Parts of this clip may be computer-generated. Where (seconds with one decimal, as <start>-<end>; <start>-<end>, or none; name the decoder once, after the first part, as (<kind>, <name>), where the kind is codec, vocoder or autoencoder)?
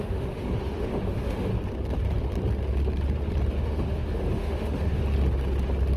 0.0-1.5 (autoencoder, DAC-VAE); 3.5-5.0